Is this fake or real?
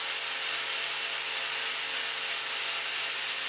real